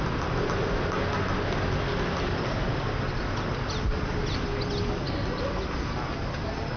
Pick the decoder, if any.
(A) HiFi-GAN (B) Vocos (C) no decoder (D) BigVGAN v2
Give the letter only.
C